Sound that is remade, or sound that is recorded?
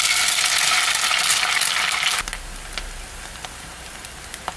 recorded